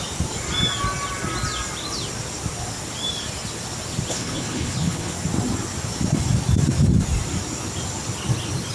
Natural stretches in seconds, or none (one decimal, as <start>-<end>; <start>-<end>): 0.0-4.1; 5.1-8.7